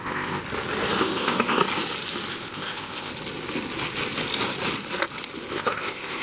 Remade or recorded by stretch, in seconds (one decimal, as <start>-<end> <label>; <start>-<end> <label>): 0.0-0.4 remade; 0.4-1.0 recorded; 1.0-1.6 remade; 1.6-2.3 recorded; 2.3-3.1 remade; 3.1-5.5 recorded; 5.5-6.2 remade